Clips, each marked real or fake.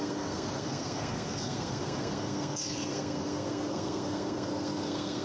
fake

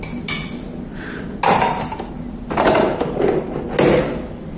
real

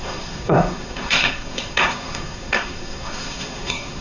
fake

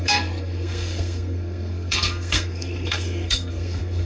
fake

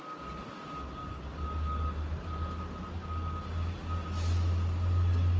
real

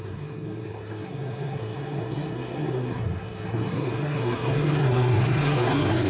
fake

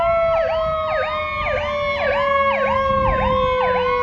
real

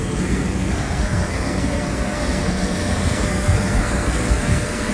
fake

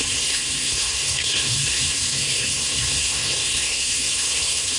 fake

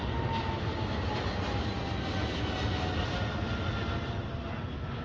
real